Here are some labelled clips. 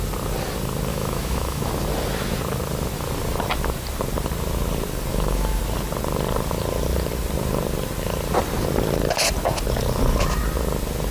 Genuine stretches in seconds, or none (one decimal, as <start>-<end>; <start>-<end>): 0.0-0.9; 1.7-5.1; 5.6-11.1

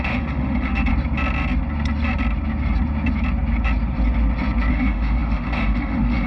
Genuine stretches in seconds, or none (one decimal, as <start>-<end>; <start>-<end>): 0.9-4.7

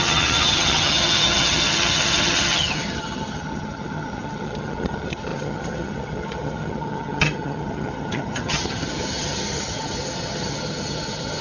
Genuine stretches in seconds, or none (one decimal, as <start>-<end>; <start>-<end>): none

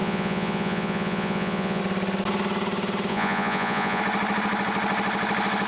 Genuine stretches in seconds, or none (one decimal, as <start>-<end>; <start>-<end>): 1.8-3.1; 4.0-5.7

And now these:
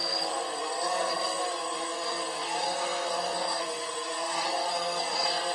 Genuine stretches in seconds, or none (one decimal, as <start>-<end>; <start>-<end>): none

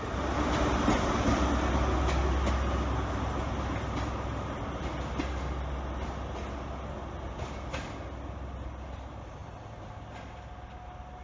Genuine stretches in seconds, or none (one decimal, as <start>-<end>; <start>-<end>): 0.0-11.2

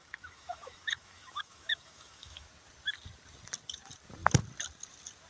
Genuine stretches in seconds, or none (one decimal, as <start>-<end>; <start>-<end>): 2.5-5.3

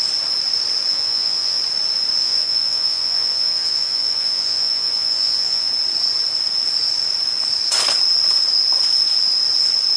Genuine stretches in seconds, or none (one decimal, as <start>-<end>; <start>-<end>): 0.0-0.9; 1.6-2.2; 5.7-10.0